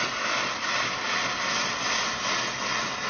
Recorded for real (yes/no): yes